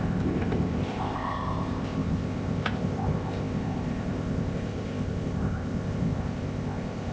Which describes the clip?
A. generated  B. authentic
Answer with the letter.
A